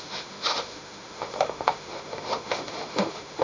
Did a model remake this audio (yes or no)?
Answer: yes